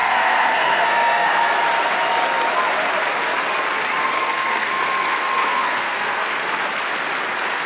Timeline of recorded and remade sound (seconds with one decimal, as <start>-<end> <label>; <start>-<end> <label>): 0.0-1.5 remade; 1.5-4.0 recorded; 4.0-6.3 remade; 6.3-7.7 recorded